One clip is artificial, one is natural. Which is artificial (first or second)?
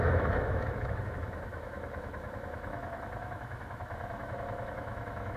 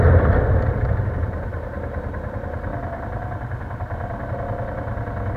first